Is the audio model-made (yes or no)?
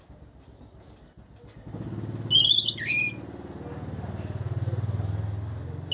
no